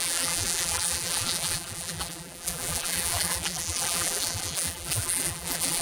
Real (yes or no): no